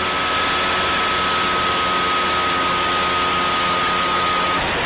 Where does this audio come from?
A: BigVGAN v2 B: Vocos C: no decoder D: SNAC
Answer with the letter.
C